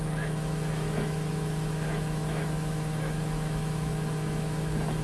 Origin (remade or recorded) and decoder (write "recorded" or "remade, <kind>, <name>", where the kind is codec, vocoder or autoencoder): remade, autoencoder, DAC-VAE